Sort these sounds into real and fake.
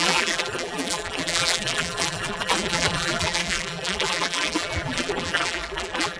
fake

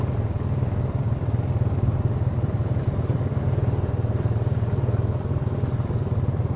fake